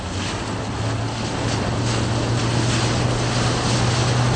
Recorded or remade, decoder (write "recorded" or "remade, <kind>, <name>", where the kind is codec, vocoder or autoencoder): recorded